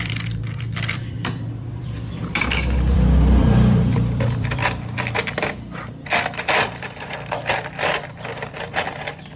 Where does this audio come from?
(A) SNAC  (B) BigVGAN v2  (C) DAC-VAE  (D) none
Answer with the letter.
B